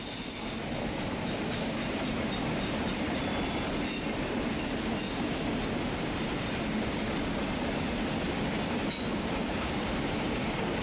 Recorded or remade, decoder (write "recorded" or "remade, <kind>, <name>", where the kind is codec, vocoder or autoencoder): recorded